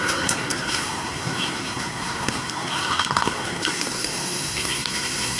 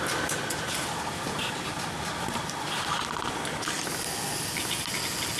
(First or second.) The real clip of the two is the second